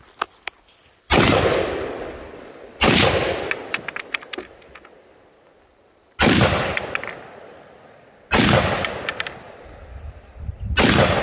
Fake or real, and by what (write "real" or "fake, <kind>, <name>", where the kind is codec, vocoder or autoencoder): real